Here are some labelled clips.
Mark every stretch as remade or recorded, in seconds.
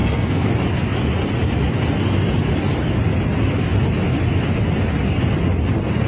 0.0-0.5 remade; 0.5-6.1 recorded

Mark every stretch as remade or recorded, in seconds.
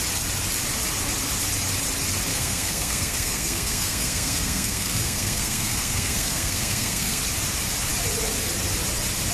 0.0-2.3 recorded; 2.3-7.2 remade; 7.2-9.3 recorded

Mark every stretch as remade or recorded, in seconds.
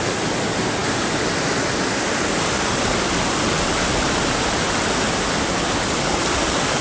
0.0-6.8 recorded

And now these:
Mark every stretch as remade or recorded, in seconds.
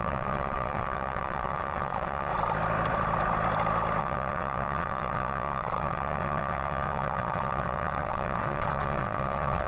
0.0-2.3 remade; 2.3-4.0 recorded; 4.0-9.7 remade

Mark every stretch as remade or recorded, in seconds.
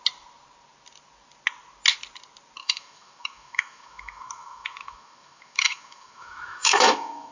0.0-2.6 recorded; 2.6-7.3 remade